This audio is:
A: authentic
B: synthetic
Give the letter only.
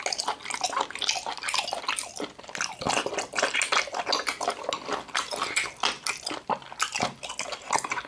A